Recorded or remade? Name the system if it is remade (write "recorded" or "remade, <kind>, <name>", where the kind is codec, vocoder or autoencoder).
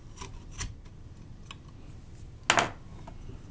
recorded